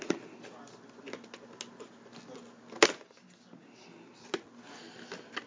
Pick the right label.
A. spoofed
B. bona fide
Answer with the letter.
B